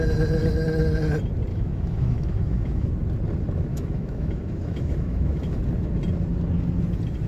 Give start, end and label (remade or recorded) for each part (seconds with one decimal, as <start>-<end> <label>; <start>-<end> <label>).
0.0-1.5 recorded; 1.5-2.9 remade; 2.9-3.7 recorded; 3.7-5.6 remade; 5.6-7.3 recorded

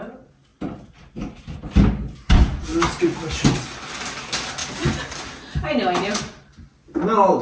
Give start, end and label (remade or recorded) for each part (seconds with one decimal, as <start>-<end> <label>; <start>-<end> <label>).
0.0-7.4 recorded

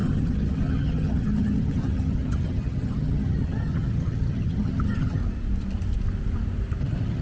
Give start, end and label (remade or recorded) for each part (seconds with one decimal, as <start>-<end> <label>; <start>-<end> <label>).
0.0-5.2 remade; 5.2-6.8 recorded; 6.8-7.2 remade

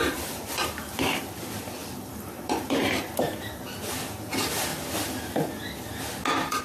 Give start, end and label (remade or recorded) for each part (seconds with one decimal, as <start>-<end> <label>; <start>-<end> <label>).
0.0-1.3 remade; 1.3-1.8 recorded; 1.8-3.8 remade; 3.8-6.6 recorded

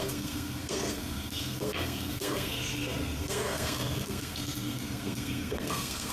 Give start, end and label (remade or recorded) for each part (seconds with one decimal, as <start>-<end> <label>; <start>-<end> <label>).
0.0-6.1 remade

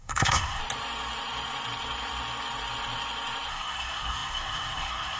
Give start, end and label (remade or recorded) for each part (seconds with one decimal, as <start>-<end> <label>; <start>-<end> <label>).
0.0-0.6 remade; 0.6-3.5 recorded; 3.5-5.2 remade

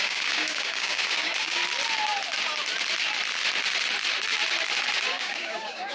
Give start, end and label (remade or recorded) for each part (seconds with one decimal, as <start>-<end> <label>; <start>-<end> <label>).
0.0-1.6 remade; 1.6-5.1 recorded; 5.1-5.9 remade

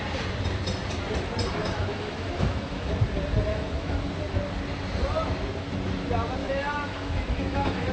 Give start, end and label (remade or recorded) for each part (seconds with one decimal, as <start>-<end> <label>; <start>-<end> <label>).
0.0-1.6 recorded; 1.6-2.9 remade; 2.9-3.5 recorded; 3.5-4.1 remade; 4.1-6.4 recorded; 6.4-7.9 remade